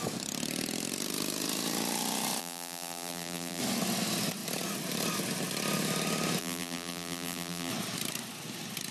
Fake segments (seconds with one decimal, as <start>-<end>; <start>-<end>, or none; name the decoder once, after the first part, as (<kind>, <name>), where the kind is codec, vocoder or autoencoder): 2.4-3.6 (vocoder, BigVGAN v2); 6.4-7.7